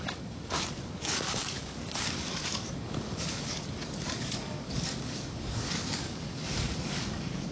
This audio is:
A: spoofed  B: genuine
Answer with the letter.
A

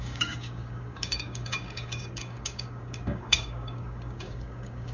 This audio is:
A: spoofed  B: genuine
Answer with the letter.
A